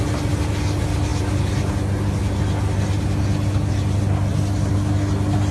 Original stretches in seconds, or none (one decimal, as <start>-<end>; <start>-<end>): 0.0-5.5